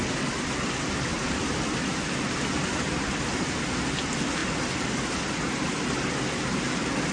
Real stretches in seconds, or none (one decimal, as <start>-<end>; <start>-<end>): 0.0-7.1